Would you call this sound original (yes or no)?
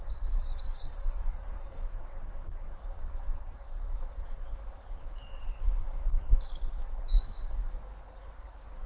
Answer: no